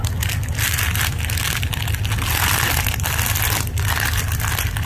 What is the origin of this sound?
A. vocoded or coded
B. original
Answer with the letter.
B